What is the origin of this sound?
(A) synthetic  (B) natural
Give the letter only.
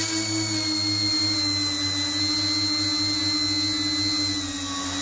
B